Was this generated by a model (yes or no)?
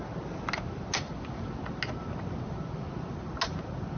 no